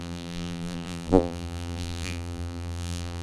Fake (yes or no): yes